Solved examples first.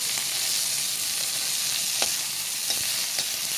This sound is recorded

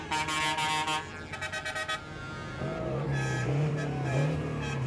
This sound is recorded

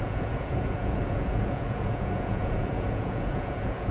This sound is remade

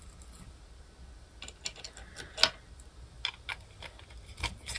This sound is recorded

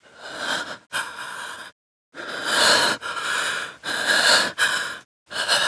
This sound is recorded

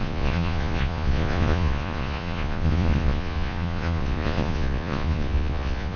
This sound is remade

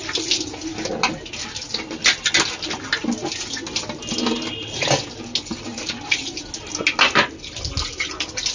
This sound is recorded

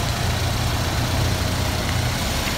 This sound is recorded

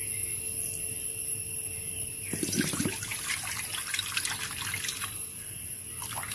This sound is recorded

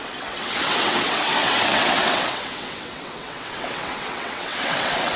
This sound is remade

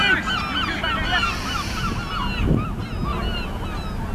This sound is recorded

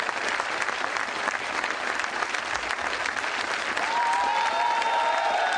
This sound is recorded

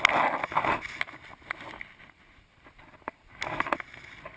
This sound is recorded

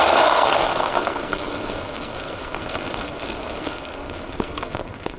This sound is remade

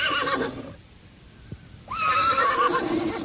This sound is remade